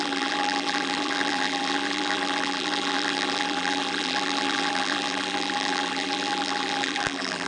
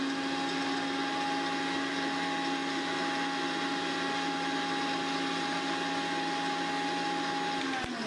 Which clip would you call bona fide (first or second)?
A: second